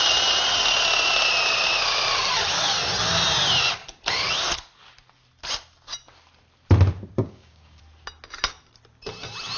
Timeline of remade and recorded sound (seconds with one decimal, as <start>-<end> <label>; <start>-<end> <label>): 0.0-7.2 recorded; 7.2-7.8 remade; 7.8-9.6 recorded